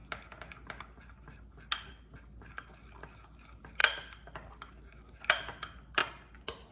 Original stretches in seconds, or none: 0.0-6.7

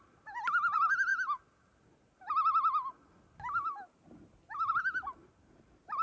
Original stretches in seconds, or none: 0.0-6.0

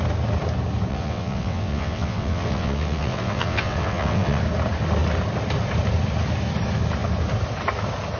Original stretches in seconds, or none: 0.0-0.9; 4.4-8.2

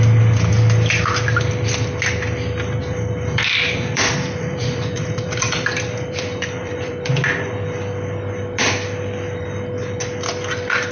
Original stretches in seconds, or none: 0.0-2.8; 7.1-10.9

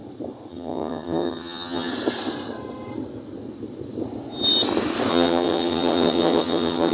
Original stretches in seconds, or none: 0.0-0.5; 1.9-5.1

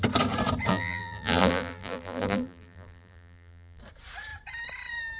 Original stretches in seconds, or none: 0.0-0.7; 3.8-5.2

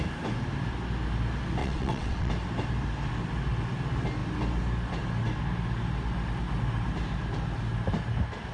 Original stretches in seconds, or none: 0.0-1.6; 2.3-8.5

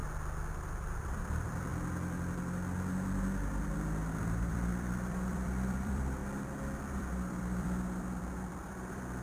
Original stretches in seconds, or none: 0.0-0.5; 1.7-4.2; 6.2-6.9